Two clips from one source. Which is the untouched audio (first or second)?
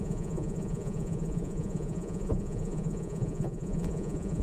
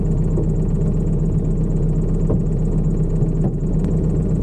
second